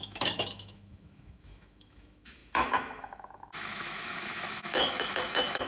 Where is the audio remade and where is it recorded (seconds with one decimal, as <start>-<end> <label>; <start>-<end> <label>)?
0.0-5.7 remade